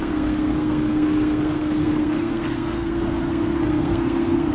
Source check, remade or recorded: remade